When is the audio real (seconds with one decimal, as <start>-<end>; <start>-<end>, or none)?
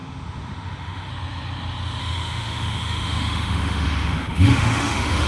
1.1-2.0